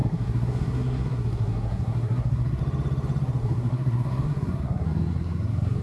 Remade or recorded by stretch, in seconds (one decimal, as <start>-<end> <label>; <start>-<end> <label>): 0.0-2.6 remade; 2.6-3.4 recorded; 3.4-5.8 remade